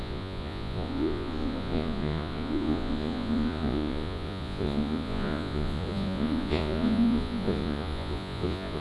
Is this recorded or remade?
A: remade